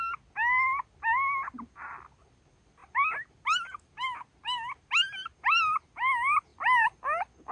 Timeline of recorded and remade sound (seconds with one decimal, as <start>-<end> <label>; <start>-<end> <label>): 0.0-6.5 recorded; 6.5-7.0 remade; 7.0-7.5 recorded